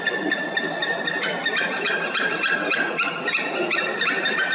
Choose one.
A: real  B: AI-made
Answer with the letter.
A